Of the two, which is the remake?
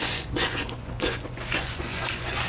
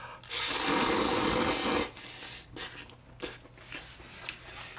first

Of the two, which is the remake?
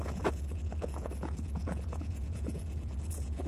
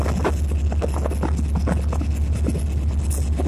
first